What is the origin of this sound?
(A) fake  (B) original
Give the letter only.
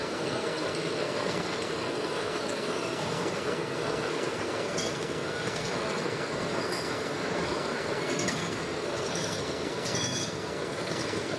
A